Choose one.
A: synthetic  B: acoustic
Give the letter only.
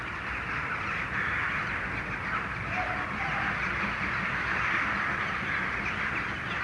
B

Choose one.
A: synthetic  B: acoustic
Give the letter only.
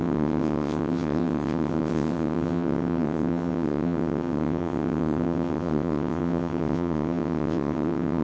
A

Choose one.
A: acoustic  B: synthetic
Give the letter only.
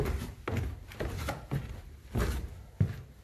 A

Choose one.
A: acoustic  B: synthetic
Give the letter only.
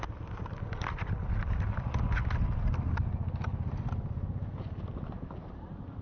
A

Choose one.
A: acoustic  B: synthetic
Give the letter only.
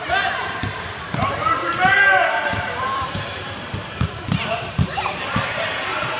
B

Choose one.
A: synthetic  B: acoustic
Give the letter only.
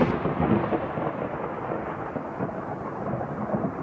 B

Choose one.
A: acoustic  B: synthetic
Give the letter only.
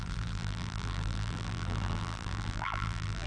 B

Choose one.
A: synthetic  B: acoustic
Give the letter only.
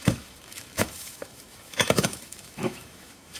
A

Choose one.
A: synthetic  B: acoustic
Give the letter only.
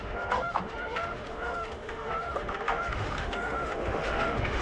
A